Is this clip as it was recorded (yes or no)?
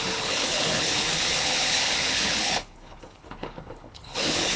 no